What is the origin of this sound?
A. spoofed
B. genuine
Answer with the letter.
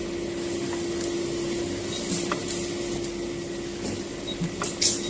B